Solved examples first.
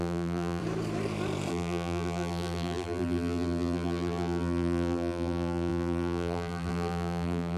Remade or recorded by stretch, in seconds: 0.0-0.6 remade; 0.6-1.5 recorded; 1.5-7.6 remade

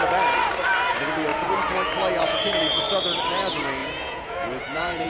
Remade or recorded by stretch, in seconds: 0.0-1.3 recorded; 1.3-2.8 remade; 2.8-3.8 recorded; 3.8-5.1 remade

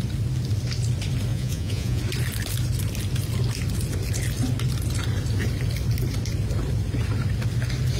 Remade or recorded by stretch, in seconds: 0.0-1.3 recorded; 1.3-2.0 remade; 2.0-8.0 recorded

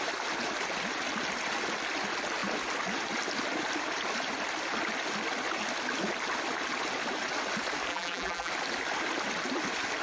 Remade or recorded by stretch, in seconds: 0.0-7.9 recorded; 7.9-8.5 remade; 8.5-10.0 recorded

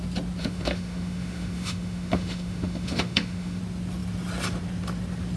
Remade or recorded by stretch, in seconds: 0.0-0.4 recorded; 0.4-3.6 remade; 3.6-5.4 recorded

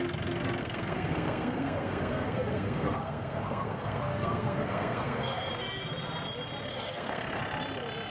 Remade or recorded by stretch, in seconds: 0.0-0.6 recorded; 0.6-5.5 remade; 5.5-6.7 recorded; 6.7-7.4 remade; 7.4-8.1 recorded